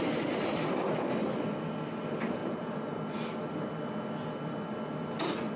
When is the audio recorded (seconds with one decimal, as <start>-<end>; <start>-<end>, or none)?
0.0-5.6